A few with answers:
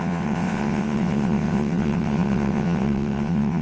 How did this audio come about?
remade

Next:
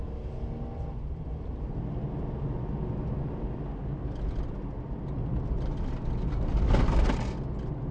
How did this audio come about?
recorded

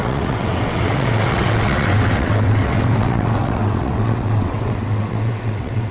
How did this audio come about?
remade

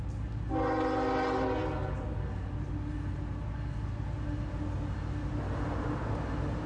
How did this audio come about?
recorded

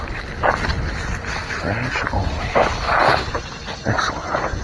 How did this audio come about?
recorded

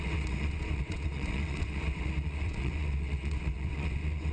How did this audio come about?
remade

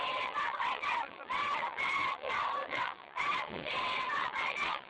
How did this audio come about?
remade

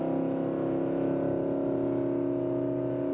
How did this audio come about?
recorded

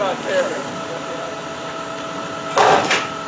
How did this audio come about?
recorded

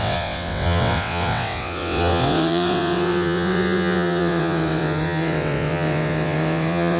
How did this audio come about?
remade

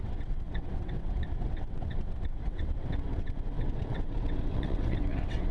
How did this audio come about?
remade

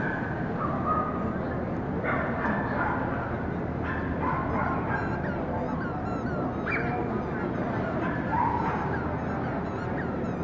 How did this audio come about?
recorded